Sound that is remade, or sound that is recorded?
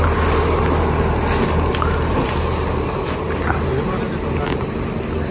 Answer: recorded